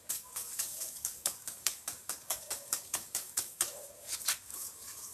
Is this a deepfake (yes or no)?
yes